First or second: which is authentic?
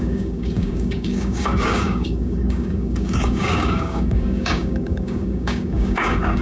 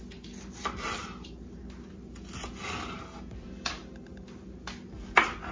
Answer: second